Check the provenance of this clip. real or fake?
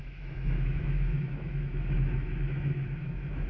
fake